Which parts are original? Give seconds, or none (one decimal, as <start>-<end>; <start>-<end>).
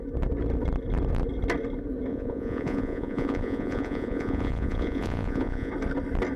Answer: 0.0-2.1; 5.7-6.4